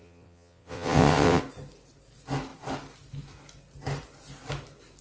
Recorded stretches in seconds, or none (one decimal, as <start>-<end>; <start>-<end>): 1.4-5.0